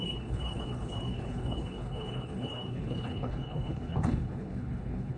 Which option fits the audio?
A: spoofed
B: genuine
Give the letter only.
A